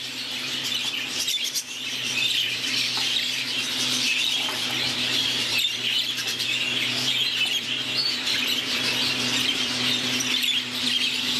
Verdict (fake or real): fake